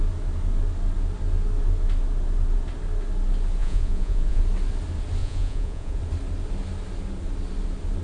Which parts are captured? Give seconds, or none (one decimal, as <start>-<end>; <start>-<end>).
0.0-3.6; 4.4-5.2; 6.0-8.0

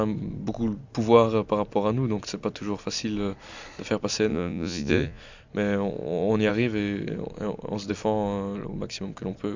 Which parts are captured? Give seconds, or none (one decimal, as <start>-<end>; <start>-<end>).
0.0-4.3; 5.2-9.6

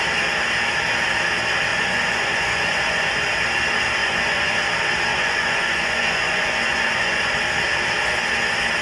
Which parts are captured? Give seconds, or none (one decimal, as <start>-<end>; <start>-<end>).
0.0-1.7; 3.3-4.0; 4.6-5.1; 7.4-8.8

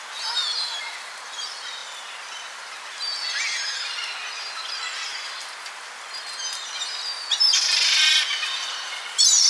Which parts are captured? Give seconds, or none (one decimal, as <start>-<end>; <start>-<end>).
0.0-9.5

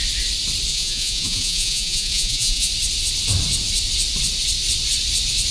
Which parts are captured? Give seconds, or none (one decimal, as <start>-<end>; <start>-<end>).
0.0-0.7; 2.7-5.5